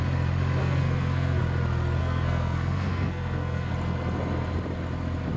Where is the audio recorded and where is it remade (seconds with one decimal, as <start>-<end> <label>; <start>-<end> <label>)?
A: 0.0-0.6 recorded; 0.6-1.4 remade; 1.4-2.0 recorded; 2.0-3.7 remade; 3.7-5.4 recorded